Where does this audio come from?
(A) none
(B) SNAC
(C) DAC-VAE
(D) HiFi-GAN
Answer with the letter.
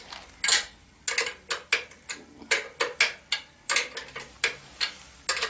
A